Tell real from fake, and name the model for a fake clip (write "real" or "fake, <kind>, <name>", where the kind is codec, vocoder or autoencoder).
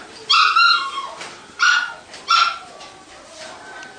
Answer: real